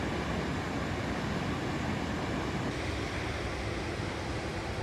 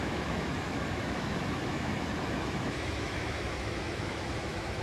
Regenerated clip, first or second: second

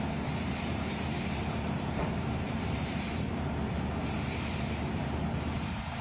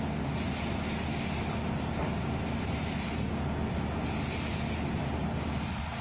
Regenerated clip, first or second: first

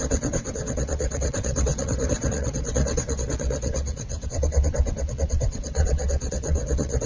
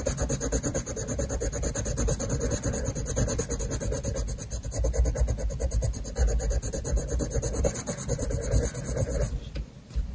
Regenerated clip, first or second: first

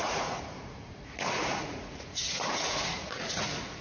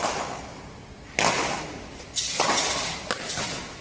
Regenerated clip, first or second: first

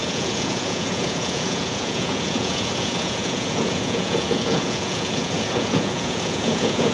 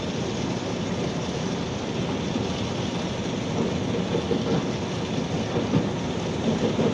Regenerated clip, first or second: first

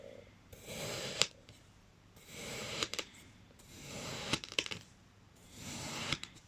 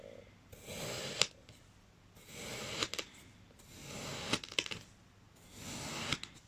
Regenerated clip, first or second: first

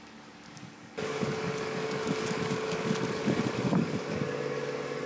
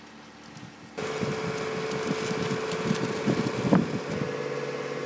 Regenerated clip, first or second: first